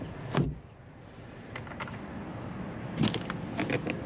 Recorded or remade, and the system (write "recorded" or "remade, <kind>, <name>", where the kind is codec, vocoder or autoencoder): recorded